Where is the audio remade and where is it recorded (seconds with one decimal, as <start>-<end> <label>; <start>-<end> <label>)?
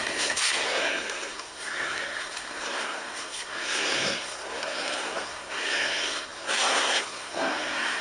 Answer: 0.0-8.0 remade